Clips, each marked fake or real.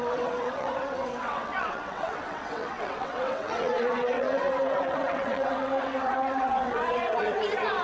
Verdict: fake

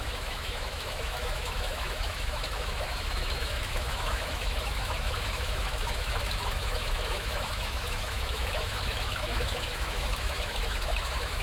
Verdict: fake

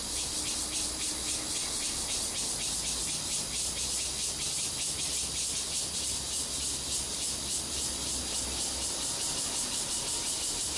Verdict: real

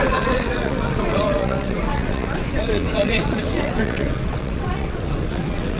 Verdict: fake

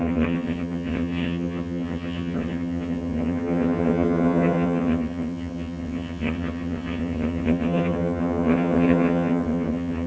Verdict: fake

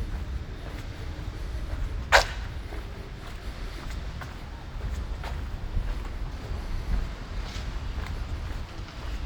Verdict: real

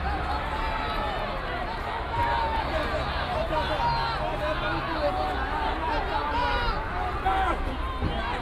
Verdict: real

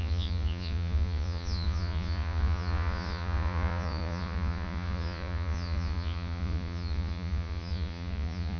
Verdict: fake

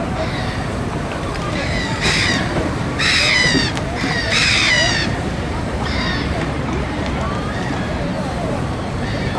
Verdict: fake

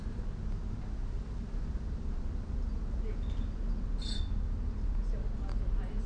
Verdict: real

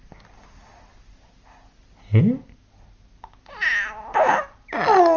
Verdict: real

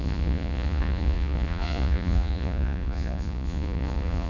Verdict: fake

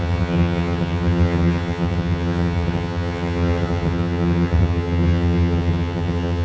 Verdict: fake